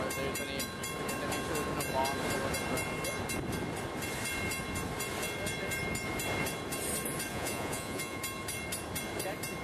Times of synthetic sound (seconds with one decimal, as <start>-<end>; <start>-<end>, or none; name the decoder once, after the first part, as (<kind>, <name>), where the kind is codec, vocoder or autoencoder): 7.3-8.2 (vocoder, Vocos)

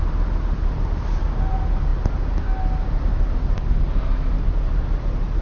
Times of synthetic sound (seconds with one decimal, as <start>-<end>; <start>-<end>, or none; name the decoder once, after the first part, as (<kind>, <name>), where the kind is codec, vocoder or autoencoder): none

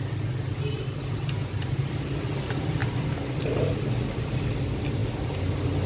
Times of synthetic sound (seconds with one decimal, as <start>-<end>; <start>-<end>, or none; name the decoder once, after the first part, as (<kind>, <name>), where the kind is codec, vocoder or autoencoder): none

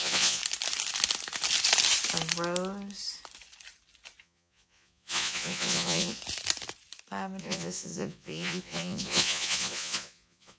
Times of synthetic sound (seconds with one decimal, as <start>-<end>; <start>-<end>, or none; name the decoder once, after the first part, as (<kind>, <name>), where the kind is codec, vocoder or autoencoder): 0.0-0.4 (vocoder, Vocos); 4.2-6.2; 7.4-10.6